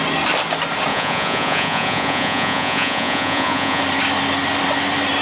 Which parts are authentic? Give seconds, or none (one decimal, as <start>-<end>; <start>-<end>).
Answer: 0.0-0.9; 3.8-5.2